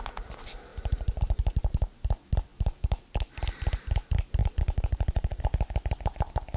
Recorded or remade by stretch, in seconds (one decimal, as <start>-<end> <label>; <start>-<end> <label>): 0.0-0.7 recorded; 0.7-1.2 remade; 1.2-2.5 recorded; 2.5-3.6 remade; 3.6-4.4 recorded; 4.4-5.4 remade; 5.4-6.6 recorded